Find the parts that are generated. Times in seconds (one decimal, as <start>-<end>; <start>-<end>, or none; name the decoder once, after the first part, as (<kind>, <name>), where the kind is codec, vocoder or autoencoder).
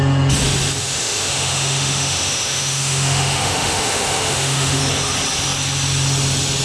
0.8-4.8 (autoencoder, DAC-VAE)